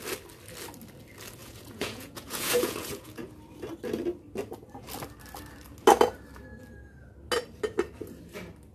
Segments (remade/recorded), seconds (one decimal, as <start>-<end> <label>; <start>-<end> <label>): 0.0-1.4 recorded; 1.4-3.3 remade; 3.3-8.7 recorded